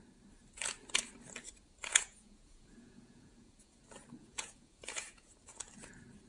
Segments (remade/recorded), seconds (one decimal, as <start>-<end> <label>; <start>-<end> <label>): 0.0-1.9 recorded; 1.9-3.8 remade; 3.8-4.2 recorded; 4.2-5.3 remade; 5.3-6.3 recorded